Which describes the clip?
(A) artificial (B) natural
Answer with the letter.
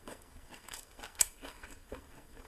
A